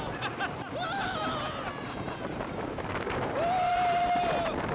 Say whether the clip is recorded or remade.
recorded